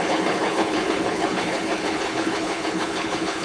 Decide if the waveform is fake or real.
fake